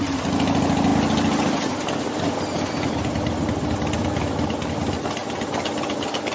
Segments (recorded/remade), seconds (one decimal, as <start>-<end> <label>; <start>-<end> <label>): 0.0-6.3 recorded